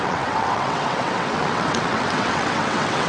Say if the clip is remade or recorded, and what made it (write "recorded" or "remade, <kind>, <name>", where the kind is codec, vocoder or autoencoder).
remade, vocoder, WaveNeXt